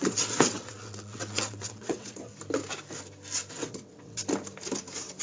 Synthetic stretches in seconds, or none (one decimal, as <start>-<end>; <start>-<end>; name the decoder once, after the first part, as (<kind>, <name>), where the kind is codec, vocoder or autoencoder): 0.0-2.3 (vocoder, WaveNeXt); 3.5-4.2